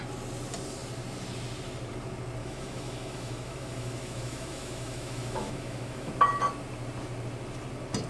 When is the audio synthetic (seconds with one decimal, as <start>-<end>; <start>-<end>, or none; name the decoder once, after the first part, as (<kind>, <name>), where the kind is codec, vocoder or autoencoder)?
2.4-6.1 (autoencoder, DAC-VAE)